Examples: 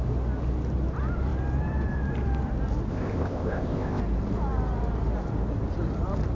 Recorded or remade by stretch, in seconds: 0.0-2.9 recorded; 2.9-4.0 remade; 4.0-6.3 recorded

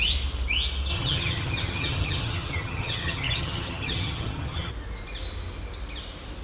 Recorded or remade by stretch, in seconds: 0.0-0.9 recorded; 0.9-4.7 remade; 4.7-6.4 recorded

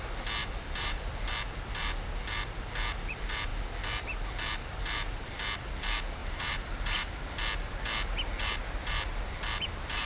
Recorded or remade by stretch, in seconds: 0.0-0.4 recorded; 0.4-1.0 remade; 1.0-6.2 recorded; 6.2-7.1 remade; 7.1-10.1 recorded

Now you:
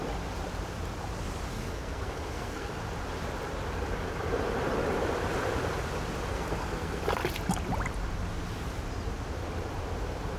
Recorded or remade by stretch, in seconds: 0.0-1.5 recorded; 1.5-2.7 remade; 2.7-6.3 recorded; 6.3-7.0 remade; 7.0-10.4 recorded